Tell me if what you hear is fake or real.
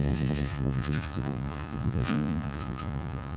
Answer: fake